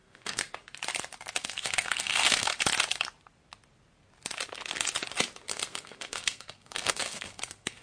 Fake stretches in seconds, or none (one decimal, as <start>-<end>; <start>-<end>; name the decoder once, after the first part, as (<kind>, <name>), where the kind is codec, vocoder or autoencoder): 0.0-0.4 (codec, SNAC); 1.3-2.5; 5.5-7.8

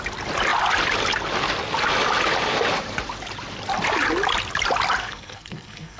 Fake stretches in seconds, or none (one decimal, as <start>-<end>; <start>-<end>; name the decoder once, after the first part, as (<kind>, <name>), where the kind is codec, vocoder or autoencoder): 5.0-6.0 (codec, SNAC)

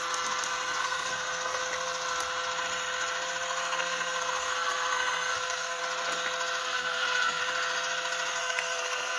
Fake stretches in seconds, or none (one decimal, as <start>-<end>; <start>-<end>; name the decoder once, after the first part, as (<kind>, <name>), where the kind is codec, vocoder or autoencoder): 0.8-1.6 (codec, SNAC); 3.6-5.8; 6.6-7.4; 8.3-9.2

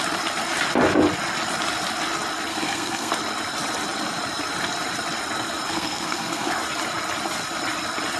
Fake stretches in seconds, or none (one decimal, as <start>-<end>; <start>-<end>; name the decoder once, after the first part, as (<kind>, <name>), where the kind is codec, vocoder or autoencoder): 2.5-3.1 (codec, SNAC); 5.7-6.5

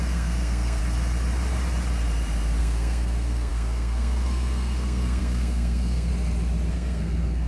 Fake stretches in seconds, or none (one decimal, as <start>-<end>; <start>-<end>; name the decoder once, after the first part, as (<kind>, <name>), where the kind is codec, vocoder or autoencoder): 0.0-0.8 (codec, SNAC); 2.6-6.1; 6.7-7.5

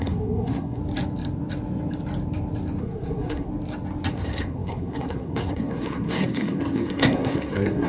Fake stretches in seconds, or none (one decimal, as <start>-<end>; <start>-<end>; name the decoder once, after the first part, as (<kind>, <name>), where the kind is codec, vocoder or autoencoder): 0.0-0.8 (codec, SNAC); 2.8-3.5; 4.1-7.9